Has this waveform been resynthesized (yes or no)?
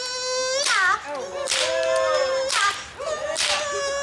no